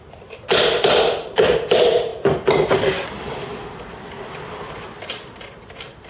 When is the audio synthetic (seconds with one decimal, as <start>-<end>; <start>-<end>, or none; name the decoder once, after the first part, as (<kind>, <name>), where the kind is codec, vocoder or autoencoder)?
none